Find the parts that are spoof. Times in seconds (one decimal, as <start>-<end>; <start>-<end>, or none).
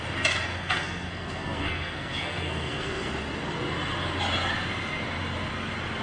0.5-3.1